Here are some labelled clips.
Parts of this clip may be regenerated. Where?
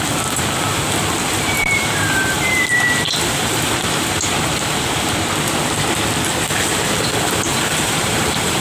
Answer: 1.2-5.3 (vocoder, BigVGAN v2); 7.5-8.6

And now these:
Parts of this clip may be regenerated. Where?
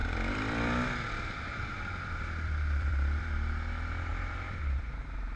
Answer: 0.0-3.2 (vocoder, BigVGAN v2); 4.1-5.0